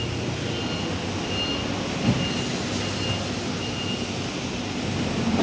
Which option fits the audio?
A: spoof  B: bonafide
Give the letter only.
B